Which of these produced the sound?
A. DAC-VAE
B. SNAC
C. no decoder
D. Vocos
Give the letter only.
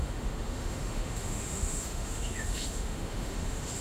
A